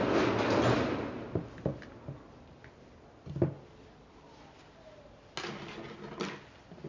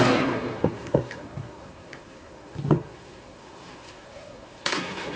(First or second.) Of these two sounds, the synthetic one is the second